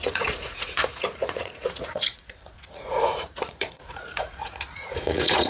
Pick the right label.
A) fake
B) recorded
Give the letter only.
A